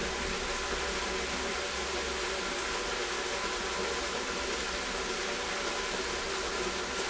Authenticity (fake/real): real